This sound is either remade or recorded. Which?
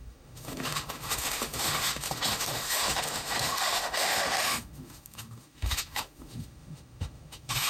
remade